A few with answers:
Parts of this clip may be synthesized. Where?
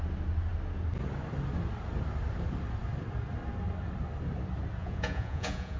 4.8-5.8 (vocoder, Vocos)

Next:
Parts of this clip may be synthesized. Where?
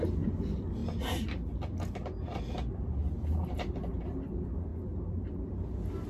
none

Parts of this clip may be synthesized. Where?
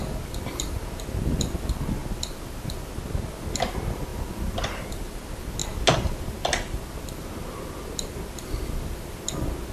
none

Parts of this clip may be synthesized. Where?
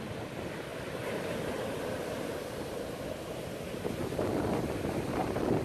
none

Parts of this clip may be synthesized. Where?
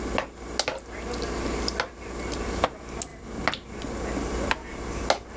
none